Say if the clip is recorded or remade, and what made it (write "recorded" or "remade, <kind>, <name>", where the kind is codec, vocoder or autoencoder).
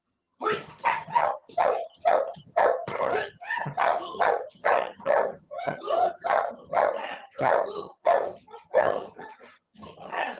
remade, vocoder, HiFi-GAN